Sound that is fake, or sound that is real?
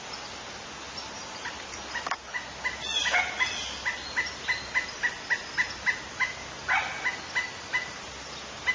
real